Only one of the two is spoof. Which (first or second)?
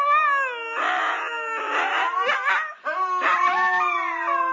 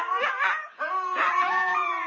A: second